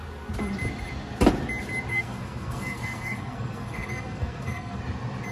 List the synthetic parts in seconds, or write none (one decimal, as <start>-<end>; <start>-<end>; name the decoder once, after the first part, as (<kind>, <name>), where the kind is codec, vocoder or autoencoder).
1.9-4.8 (codec, SNAC)